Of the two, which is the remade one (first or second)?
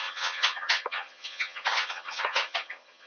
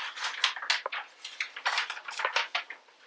first